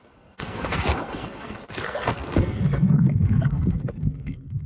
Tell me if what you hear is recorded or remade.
remade